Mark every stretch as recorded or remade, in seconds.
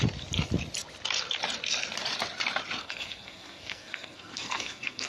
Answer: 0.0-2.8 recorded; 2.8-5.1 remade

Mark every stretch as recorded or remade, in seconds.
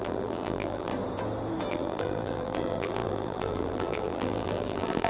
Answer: 0.0-0.9 remade; 0.9-1.7 recorded; 1.7-5.1 remade